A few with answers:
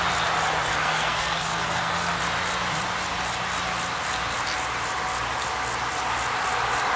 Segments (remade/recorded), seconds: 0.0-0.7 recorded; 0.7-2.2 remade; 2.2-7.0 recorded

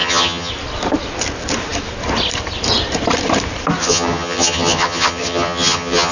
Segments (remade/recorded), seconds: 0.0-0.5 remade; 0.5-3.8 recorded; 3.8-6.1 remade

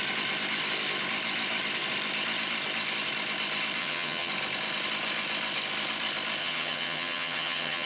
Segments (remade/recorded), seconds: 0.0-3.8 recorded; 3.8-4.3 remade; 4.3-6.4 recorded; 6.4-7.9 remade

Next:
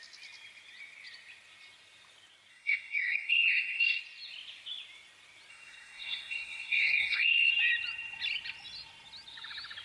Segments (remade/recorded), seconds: 0.0-2.5 recorded; 2.5-4.0 remade; 4.0-5.5 recorded; 5.5-7.5 remade; 7.5-9.8 recorded

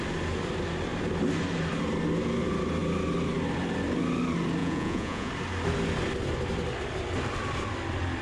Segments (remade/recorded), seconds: 0.0-4.6 recorded; 4.6-5.3 remade; 5.3-8.2 recorded